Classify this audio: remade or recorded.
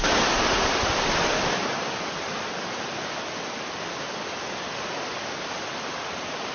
recorded